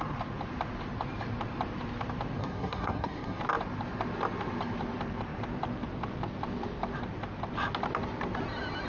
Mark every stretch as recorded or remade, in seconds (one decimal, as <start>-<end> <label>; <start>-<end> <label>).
0.0-2.4 recorded; 2.4-3.4 remade; 3.4-8.9 recorded